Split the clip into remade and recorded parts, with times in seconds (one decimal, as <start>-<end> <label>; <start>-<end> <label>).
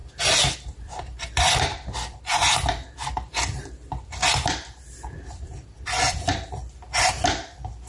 0.0-0.8 recorded; 0.8-7.9 remade